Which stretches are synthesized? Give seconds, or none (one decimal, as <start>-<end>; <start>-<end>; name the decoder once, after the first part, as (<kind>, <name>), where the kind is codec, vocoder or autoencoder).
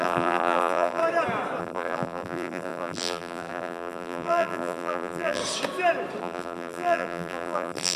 0.0-1.0 (vocoder, BigVGAN v2); 1.6-5.4; 6.2-8.0